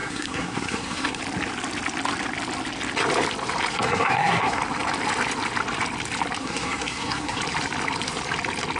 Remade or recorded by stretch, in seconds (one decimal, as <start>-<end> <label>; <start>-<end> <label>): 0.0-1.2 remade; 1.2-3.7 recorded; 3.7-4.6 remade; 4.6-6.4 recorded; 6.4-7.4 remade; 7.4-8.8 recorded